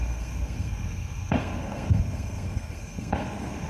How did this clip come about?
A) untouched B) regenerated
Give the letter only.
B